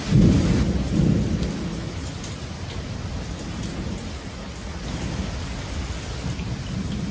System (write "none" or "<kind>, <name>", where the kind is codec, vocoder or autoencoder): none